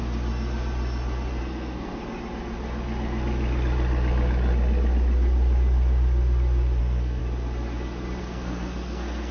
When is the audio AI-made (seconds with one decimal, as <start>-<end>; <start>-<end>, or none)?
1.4-2.0; 6.8-7.2; 8.2-9.3